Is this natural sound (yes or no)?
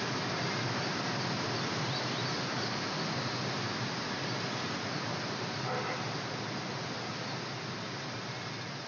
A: yes